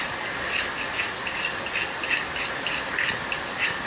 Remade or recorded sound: recorded